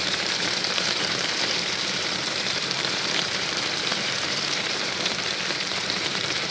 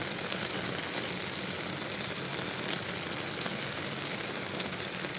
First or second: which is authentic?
second